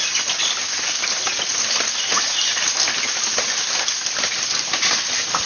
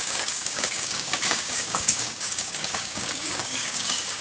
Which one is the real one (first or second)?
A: first